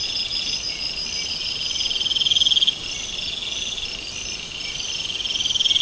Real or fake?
real